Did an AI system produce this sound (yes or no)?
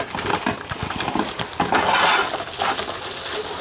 no